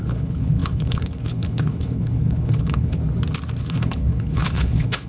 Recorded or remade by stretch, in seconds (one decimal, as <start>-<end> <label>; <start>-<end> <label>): 0.0-3.0 remade; 3.0-3.6 recorded; 3.6-5.1 remade